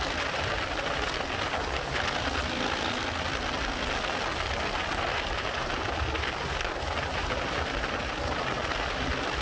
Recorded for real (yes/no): yes